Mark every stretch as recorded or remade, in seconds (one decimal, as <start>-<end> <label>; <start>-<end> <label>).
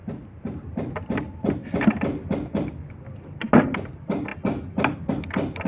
0.0-2.9 remade; 2.9-5.7 recorded